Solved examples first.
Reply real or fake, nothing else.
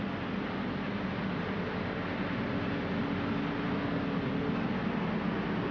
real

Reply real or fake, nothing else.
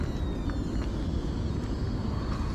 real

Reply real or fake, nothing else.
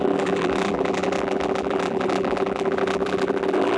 fake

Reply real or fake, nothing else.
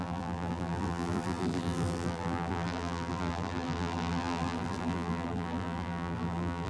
fake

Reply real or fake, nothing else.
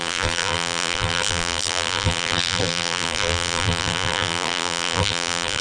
fake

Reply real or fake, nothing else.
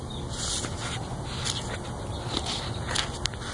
real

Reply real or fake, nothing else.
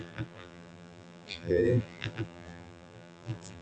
fake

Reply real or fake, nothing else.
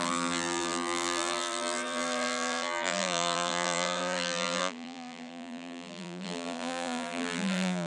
fake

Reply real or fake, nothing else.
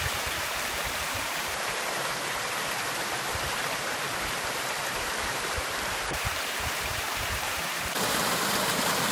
fake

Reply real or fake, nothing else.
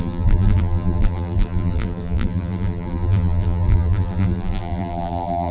fake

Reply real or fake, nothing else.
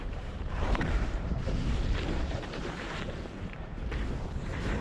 fake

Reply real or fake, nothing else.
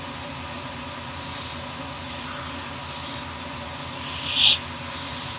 real